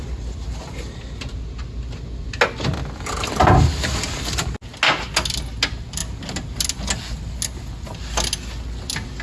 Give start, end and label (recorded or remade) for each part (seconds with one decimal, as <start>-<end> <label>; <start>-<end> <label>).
0.0-9.2 recorded